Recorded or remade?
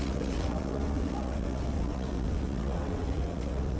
remade